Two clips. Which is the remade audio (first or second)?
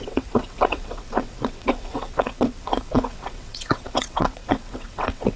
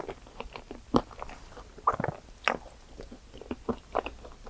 first